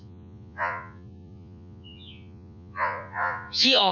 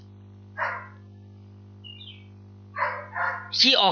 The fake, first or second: first